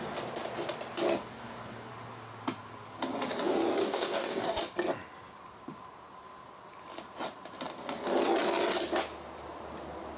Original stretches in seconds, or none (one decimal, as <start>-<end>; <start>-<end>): 0.0-1.1; 1.9-3.8; 4.6-10.2